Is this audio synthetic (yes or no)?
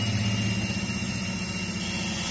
no